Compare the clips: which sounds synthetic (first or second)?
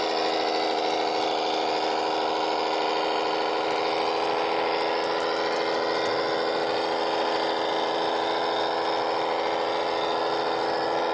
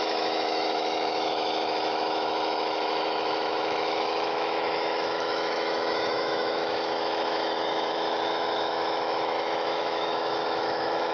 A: second